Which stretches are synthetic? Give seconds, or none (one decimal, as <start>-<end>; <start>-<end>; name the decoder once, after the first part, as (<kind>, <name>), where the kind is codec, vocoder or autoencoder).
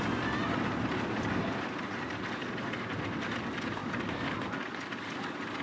none